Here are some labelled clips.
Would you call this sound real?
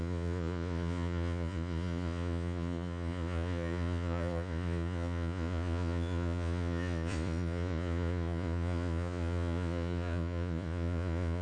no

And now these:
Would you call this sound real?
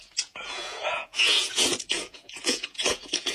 no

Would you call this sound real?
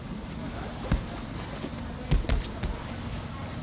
yes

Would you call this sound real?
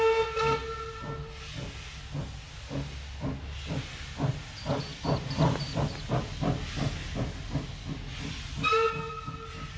yes